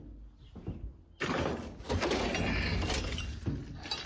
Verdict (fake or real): real